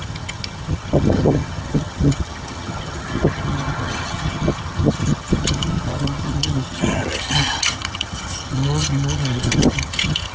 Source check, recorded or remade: remade